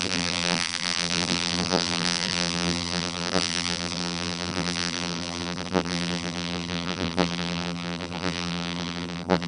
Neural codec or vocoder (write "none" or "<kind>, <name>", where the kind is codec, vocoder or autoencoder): vocoder, BigVGAN v2